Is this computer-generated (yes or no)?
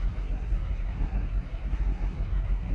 yes